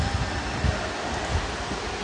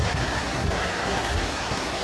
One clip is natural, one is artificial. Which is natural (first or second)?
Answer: first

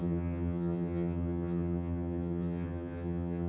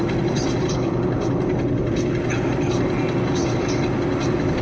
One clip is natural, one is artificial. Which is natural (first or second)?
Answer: second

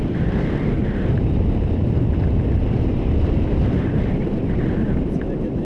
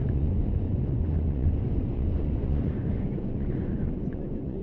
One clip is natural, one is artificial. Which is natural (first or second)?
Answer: first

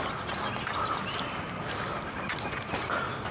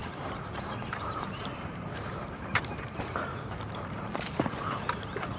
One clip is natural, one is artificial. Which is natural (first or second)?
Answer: first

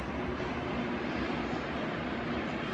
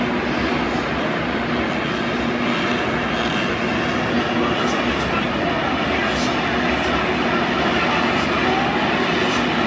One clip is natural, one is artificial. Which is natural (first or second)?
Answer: second